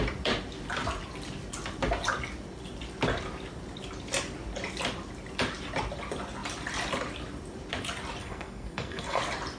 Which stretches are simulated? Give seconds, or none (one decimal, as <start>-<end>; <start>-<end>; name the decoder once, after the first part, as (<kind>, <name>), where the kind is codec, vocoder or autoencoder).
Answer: 8.2-9.2 (codec, SNAC)